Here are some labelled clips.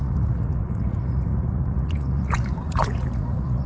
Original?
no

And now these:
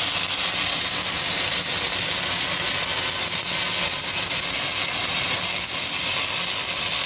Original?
yes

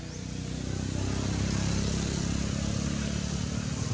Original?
yes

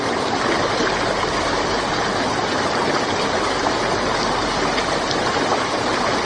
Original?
yes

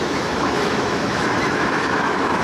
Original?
no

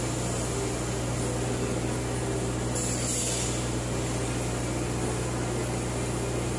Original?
yes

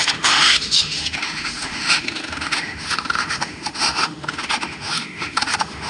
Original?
no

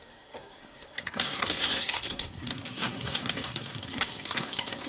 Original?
no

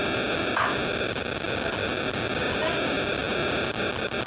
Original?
yes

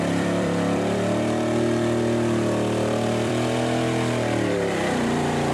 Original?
no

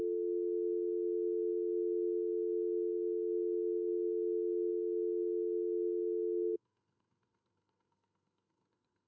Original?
no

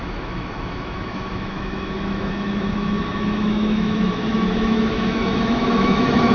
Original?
no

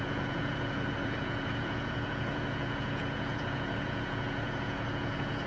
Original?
no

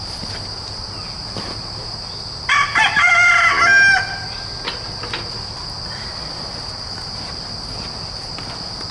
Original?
yes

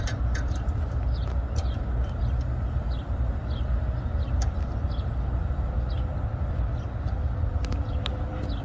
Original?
yes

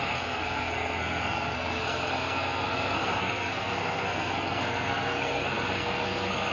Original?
no